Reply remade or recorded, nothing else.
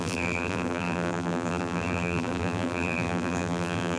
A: remade